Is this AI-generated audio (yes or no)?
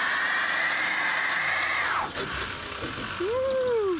no